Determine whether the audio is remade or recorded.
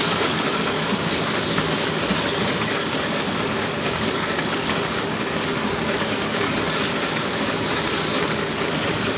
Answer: remade